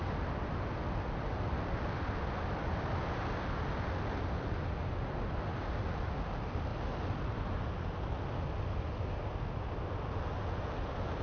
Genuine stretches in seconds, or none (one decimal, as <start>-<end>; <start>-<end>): 0.0-11.2